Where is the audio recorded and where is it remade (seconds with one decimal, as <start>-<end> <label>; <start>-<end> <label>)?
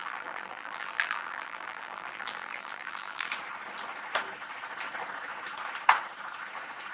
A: 0.0-3.3 remade; 3.3-6.9 recorded